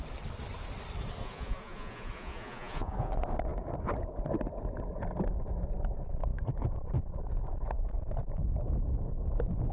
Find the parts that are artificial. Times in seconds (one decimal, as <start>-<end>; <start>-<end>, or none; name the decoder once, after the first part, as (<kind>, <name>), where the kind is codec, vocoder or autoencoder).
1.2-3.1 (vocoder, Vocos)